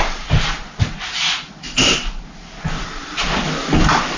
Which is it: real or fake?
real